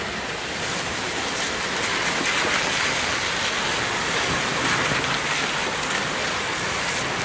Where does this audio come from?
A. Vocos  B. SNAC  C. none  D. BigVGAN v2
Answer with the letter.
C